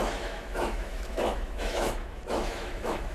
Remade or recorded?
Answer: remade